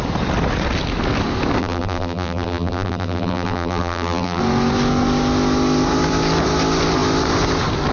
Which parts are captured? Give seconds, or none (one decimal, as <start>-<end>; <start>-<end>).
0.0-1.6; 4.4-7.9